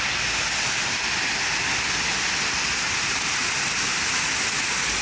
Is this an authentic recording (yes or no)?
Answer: yes